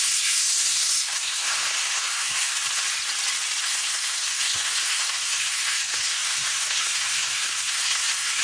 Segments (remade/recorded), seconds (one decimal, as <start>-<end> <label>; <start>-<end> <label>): 0.0-2.5 remade; 2.5-3.6 recorded; 3.6-8.4 remade